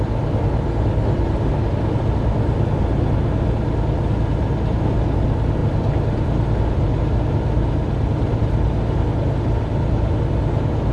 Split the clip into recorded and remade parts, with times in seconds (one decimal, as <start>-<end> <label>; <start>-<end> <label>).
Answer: 0.0-10.9 recorded